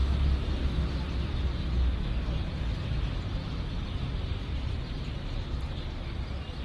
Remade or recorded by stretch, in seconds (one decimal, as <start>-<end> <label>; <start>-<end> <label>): 0.0-0.5 remade; 0.5-2.5 recorded; 2.5-5.3 remade; 5.3-6.6 recorded